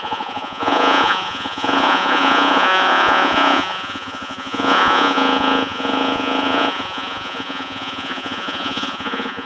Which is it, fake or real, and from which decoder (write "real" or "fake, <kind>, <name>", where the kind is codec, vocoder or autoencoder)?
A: fake, vocoder, Vocos